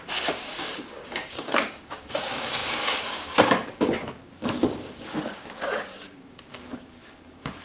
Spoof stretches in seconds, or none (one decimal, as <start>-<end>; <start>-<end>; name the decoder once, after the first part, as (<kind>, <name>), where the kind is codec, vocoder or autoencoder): 0.0-7.6 (codec, DAC)